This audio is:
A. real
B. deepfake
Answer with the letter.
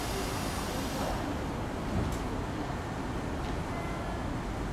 A